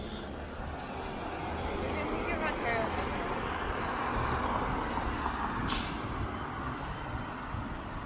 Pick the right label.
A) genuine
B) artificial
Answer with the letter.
A